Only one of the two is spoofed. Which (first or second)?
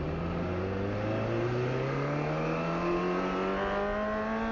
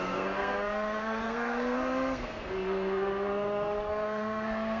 second